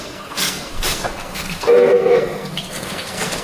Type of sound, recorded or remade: remade